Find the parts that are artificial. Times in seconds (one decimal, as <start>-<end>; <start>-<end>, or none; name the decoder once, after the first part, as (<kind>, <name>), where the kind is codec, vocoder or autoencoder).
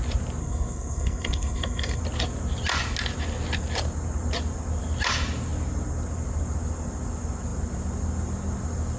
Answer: 0.4-2.0 (codec, SNAC)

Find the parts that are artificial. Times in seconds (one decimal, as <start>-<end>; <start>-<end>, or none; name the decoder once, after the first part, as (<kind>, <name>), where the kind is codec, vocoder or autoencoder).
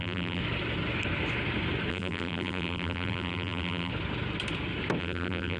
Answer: 0.0-0.4 (vocoder, BigVGAN v2); 1.9-3.9; 5.0-5.6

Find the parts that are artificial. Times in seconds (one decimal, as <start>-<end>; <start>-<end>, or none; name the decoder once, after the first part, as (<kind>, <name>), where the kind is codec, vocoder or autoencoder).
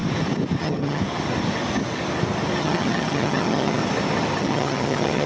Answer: 0.6-1.0 (vocoder, HiFi-GAN); 2.6-3.8; 4.4-5.3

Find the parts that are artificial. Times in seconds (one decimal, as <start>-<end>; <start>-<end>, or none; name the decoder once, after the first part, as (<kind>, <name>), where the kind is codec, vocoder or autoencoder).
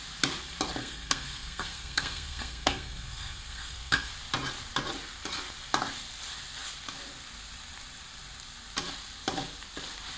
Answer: 0.8-4.1 (codec, SNAC)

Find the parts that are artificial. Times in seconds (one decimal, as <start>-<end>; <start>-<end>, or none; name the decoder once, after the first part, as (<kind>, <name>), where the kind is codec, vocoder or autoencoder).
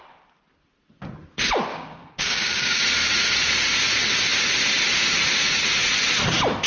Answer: 1.7-2.8 (codec, DAC)